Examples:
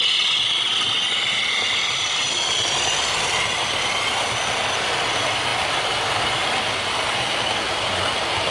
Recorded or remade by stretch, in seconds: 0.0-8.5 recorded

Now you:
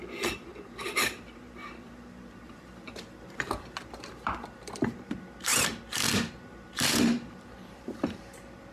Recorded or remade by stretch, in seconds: 0.0-5.5 remade; 5.5-6.3 recorded; 6.3-8.7 remade

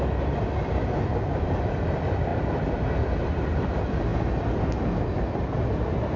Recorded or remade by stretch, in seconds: 0.0-1.1 recorded; 1.1-1.7 remade; 1.7-6.2 recorded

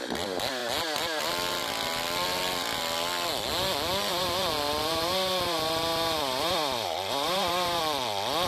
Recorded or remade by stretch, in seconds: 0.0-4.1 recorded; 4.1-7.8 remade; 7.8-8.5 recorded

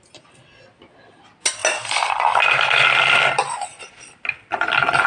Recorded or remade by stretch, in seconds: 0.0-5.1 recorded

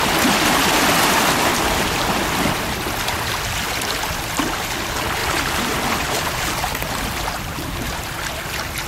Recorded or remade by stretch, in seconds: 0.0-5.2 recorded; 5.2-6.4 remade; 6.4-8.9 recorded

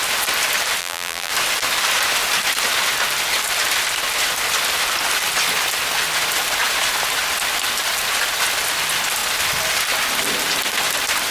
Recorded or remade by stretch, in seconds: 0.0-0.8 recorded; 0.8-1.3 remade; 1.3-11.3 recorded